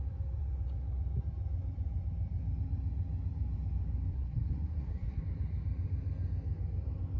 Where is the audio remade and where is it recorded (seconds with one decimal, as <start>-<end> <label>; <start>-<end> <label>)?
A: 0.0-4.1 recorded; 4.1-5.2 remade; 5.2-7.2 recorded

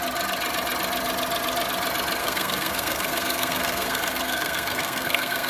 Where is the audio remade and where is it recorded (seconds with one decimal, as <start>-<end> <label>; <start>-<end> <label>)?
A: 0.0-2.2 recorded; 2.2-5.5 remade

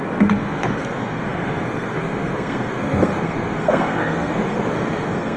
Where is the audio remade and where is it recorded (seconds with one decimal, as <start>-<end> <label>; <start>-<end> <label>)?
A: 0.0-5.4 remade

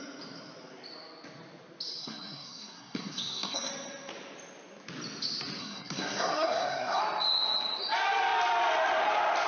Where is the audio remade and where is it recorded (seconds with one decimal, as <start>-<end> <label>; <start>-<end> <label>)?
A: 0.0-2.0 recorded; 2.0-3.7 remade; 3.7-5.6 recorded; 5.6-7.0 remade; 7.0-9.5 recorded